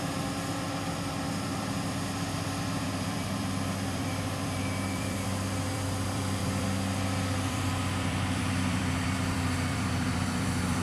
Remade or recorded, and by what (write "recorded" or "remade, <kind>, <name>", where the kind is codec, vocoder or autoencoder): remade, vocoder, BigVGAN v2